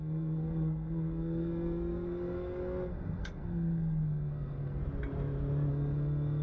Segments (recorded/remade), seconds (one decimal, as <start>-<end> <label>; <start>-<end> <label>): 0.0-4.8 remade; 4.8-5.7 recorded; 5.7-6.4 remade